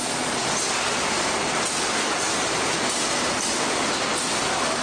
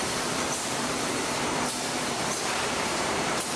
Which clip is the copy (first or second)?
second